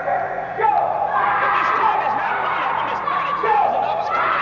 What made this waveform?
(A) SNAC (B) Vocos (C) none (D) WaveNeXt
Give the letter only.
B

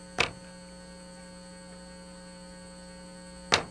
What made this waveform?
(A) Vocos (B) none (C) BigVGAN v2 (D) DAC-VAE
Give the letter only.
B